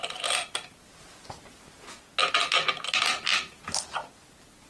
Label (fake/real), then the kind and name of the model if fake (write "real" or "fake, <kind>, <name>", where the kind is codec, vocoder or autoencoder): real